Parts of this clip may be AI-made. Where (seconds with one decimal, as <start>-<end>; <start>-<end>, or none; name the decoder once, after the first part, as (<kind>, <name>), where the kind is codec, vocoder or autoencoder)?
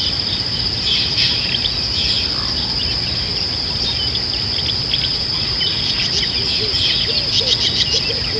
5.1-6.1 (vocoder, Vocos)